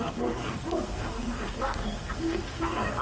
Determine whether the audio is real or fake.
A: fake